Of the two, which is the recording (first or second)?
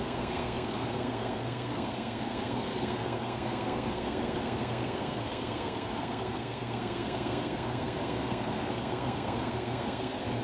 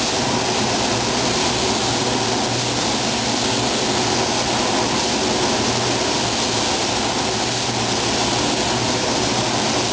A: second